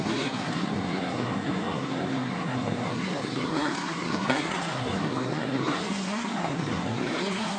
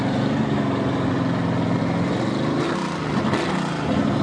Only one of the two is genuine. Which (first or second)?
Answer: second